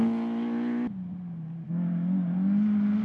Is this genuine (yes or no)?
yes